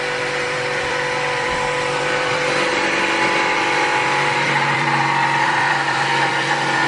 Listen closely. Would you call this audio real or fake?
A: fake